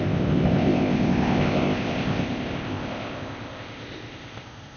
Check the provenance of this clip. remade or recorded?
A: remade